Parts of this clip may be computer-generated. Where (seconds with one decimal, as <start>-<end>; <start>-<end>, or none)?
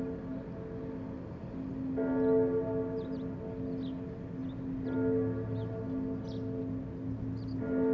none